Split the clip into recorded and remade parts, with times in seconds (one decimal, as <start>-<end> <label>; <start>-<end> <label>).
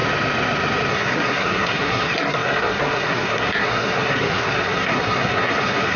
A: 0.0-0.9 recorded; 0.9-6.0 remade